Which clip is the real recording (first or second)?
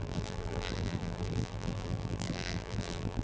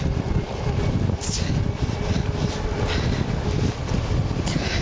second